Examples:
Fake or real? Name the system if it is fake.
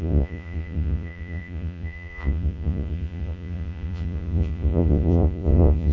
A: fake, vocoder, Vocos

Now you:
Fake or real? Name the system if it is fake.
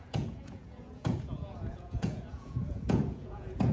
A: fake, vocoder, Vocos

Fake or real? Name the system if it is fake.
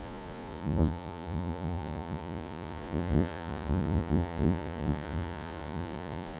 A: fake, vocoder, Vocos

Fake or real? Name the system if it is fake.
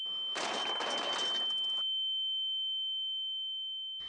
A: real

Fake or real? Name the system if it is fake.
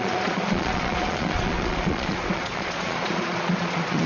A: fake, vocoder, Vocos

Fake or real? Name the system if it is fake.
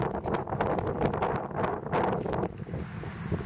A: real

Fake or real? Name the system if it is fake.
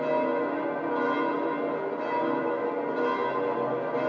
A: real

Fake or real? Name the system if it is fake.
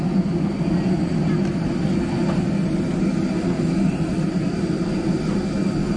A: real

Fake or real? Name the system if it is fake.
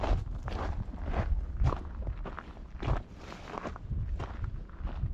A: real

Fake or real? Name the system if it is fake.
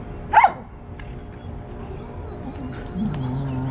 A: real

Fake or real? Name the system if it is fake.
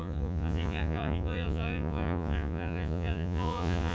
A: fake, vocoder, Vocos